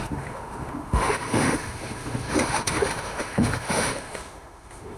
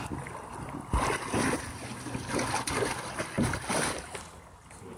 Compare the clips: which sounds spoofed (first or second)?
first